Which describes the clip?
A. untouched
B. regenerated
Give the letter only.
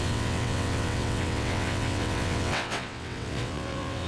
B